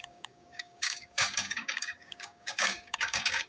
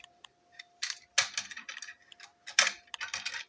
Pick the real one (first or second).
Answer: second